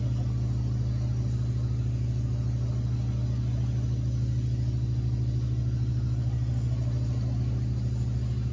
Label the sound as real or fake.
real